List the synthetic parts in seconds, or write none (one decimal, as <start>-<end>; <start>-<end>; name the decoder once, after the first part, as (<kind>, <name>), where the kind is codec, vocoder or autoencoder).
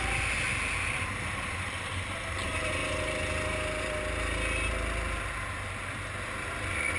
none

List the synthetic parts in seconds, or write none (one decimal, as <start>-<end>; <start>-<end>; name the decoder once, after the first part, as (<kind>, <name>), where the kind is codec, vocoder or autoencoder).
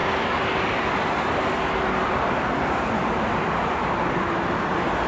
2.0-5.1 (vocoder, BigVGAN v2)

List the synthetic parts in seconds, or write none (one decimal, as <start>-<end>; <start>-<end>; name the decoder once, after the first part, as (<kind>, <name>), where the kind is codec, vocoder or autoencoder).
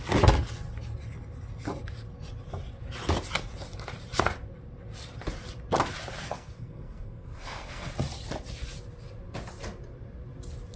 6.2-7.9 (codec, SNAC)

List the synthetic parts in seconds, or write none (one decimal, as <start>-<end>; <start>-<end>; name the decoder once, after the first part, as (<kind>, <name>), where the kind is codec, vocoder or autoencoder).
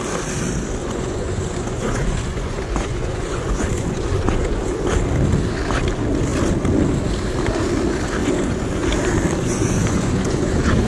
0.8-4.9 (vocoder, Vocos); 8.2-8.9; 9.4-10.9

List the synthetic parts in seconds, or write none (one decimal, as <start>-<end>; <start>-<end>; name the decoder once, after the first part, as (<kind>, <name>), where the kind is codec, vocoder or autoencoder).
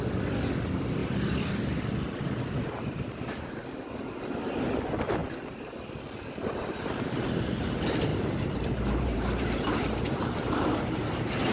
1.0-1.5 (vocoder, BigVGAN v2); 5.2-5.7; 8.1-11.5